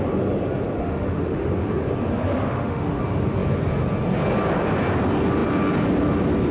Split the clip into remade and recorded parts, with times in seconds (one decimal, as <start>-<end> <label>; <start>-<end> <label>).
0.0-0.8 recorded; 0.8-1.5 remade; 1.5-2.3 recorded; 2.3-3.0 remade; 3.0-6.5 recorded